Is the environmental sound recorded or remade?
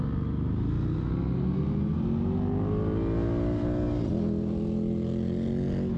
recorded